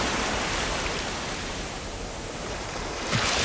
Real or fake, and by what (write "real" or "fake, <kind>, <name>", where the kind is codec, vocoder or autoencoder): real